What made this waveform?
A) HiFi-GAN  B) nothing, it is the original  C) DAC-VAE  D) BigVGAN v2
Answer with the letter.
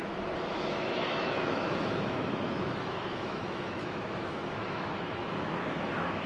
C